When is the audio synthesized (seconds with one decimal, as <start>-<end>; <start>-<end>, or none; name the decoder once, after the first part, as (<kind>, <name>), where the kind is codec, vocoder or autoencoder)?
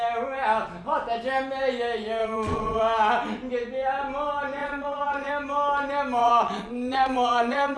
2.2-2.8 (vocoder, Vocos); 4.6-5.3; 6.2-7.8